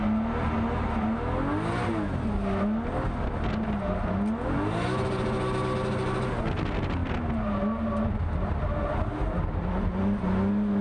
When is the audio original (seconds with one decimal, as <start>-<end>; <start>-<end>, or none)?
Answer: 0.0-10.8